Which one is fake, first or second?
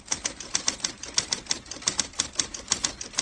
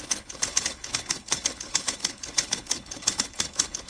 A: second